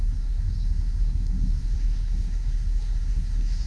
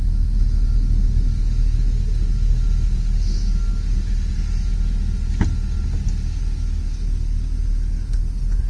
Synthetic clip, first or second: first